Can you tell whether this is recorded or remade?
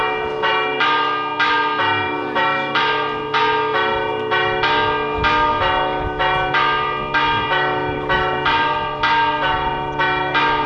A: recorded